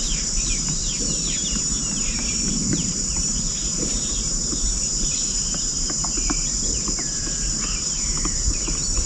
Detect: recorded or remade remade